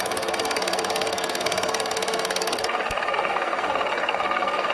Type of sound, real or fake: fake